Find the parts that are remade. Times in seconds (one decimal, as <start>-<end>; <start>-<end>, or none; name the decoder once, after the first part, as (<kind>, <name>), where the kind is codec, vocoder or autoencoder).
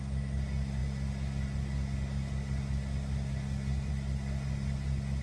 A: none